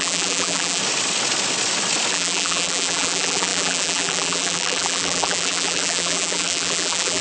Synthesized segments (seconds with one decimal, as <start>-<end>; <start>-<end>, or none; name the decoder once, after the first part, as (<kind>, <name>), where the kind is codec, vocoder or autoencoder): 0.0-0.8 (vocoder, BigVGAN v2); 2.1-7.2